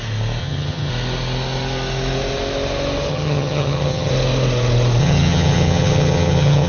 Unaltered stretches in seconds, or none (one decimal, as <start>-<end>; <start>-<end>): 0.0-0.4; 0.9-3.1; 4.1-5.0